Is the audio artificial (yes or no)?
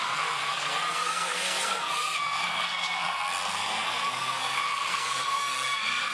yes